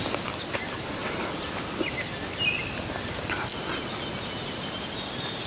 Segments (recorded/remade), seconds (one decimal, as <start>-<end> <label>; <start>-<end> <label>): 0.0-5.5 recorded